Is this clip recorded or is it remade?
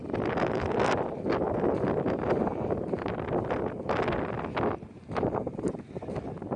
recorded